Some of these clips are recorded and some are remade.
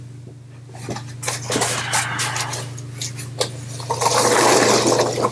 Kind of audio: recorded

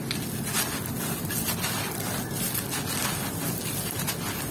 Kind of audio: recorded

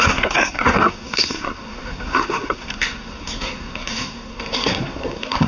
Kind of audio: remade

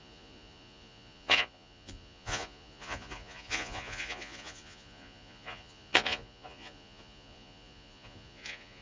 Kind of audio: remade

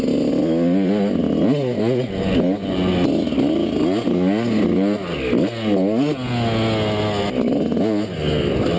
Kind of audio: recorded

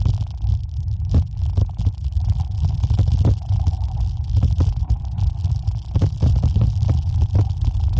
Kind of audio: recorded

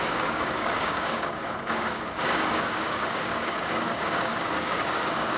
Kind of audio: remade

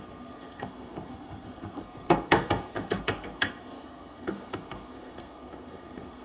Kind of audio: remade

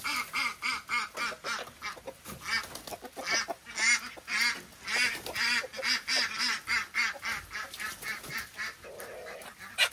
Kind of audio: recorded